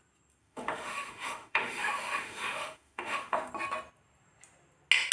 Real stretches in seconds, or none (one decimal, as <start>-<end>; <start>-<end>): 0.0-0.4; 3.5-5.1